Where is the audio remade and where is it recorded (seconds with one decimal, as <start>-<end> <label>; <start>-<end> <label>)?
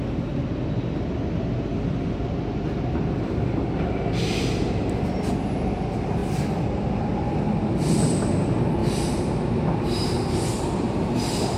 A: 0.0-1.7 recorded; 1.7-2.3 remade; 2.3-6.2 recorded; 6.2-6.9 remade; 6.9-8.8 recorded; 8.8-11.6 remade